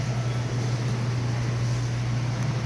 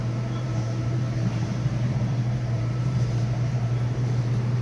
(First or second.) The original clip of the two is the first